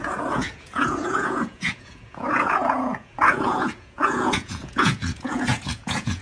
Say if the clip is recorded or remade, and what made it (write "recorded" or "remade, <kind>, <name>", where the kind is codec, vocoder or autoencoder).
remade, vocoder, Vocos